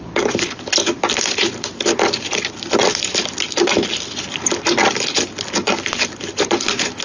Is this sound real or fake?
real